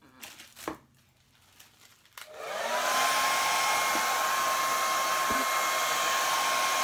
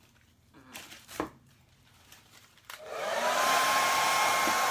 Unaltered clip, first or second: first